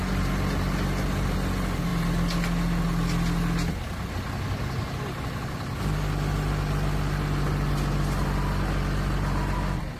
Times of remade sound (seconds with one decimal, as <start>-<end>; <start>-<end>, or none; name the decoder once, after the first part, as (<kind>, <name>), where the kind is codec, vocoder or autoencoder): none